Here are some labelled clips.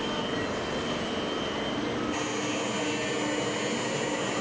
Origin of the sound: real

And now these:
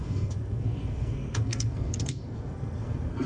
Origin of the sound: fake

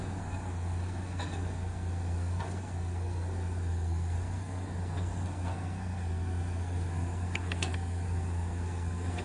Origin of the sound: fake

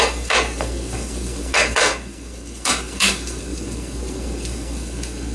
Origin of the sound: fake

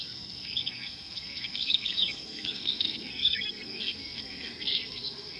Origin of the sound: fake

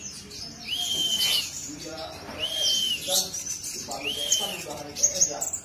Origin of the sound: real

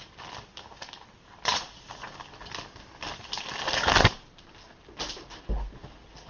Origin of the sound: real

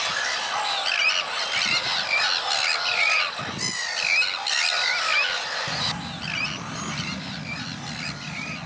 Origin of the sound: real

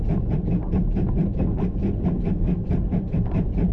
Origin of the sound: real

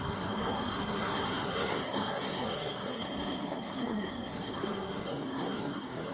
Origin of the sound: fake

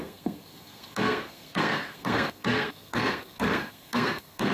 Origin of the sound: fake